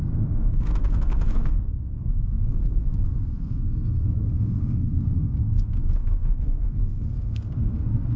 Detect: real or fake fake